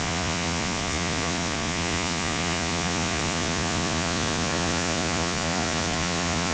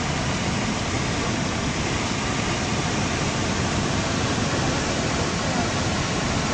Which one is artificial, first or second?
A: first